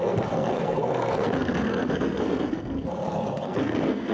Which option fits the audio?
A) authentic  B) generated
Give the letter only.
B